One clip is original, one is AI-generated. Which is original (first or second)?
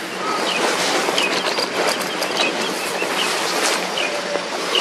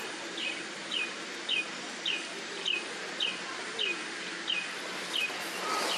second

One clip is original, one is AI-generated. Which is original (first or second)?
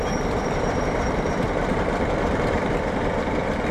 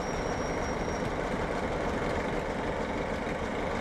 second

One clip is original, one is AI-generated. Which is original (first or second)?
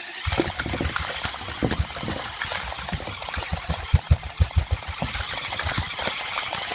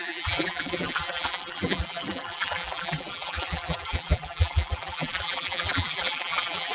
first